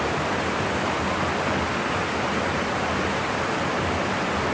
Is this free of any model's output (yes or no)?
yes